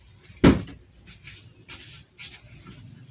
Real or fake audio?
real